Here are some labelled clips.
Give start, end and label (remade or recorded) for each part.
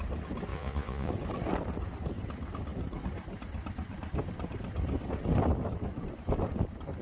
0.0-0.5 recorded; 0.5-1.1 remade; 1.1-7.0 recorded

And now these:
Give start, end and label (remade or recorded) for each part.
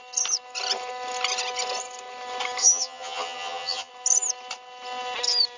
0.0-2.6 recorded; 2.6-3.9 remade; 3.9-5.6 recorded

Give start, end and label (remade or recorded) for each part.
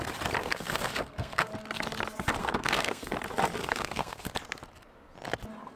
0.0-0.4 recorded; 0.4-1.5 remade; 1.5-2.4 recorded; 2.4-3.1 remade; 3.1-3.6 recorded; 3.6-4.3 remade; 4.3-5.8 recorded